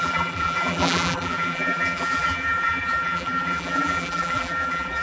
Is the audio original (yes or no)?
no